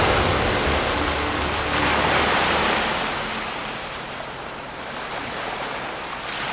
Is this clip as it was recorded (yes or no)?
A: yes